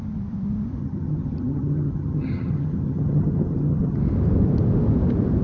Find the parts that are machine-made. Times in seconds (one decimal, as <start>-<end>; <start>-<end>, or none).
0.8-4.0